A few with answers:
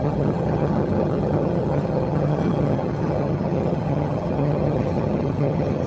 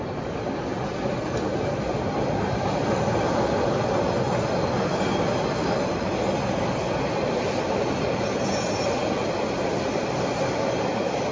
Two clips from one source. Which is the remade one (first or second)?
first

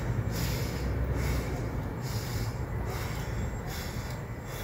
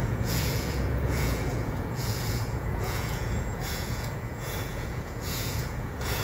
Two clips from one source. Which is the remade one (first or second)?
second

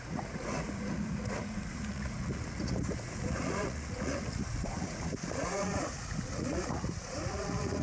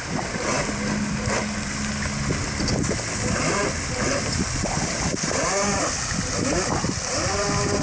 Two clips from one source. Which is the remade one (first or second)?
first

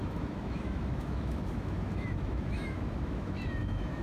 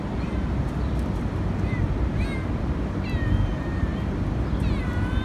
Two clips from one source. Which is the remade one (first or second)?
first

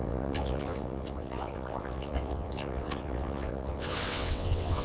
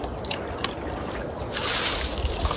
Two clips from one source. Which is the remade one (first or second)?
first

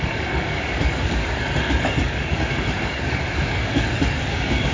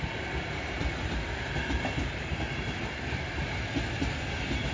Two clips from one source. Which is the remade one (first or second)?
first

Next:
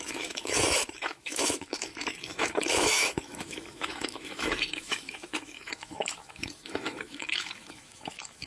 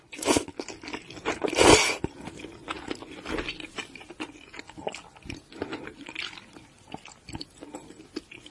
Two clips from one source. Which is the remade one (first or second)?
first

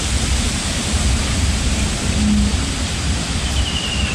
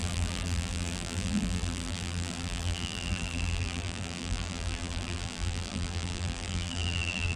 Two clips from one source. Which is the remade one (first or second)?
second